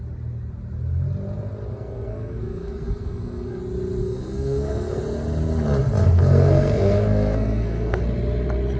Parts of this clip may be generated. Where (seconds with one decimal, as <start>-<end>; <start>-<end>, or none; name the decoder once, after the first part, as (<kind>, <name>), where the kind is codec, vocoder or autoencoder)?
1.7-3.6 (codec, SNAC); 4.0-5.0; 6.0-8.0